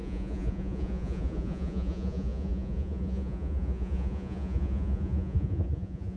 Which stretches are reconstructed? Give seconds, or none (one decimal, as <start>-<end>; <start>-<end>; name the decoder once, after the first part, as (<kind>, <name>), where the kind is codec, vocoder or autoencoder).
0.0-6.2 (vocoder, Vocos)